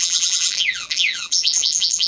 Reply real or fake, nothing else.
fake